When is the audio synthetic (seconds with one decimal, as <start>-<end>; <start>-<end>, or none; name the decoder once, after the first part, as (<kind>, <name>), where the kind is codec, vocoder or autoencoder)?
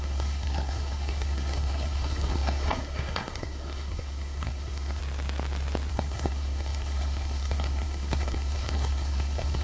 0.0-5.0 (codec, SNAC); 5.9-9.6